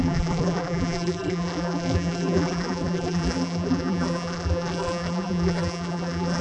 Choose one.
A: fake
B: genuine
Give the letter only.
A